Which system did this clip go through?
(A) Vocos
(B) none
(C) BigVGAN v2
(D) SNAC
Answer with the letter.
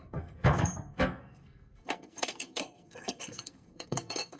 D